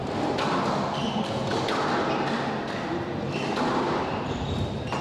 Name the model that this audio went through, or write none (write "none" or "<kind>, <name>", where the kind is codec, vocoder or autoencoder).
none